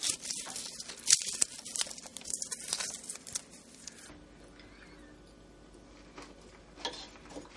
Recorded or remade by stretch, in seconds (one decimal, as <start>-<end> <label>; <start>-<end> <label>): 0.0-7.6 recorded